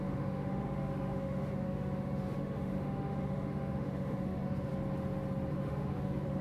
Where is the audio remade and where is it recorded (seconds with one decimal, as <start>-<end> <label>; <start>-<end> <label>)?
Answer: 0.0-4.7 remade; 4.7-5.5 recorded; 5.5-6.4 remade